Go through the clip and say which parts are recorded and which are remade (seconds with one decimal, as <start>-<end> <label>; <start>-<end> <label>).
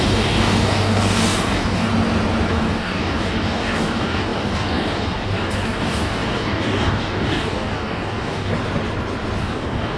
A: 0.0-1.9 remade; 1.9-2.5 recorded; 2.5-8.5 remade; 8.5-9.4 recorded; 9.4-10.0 remade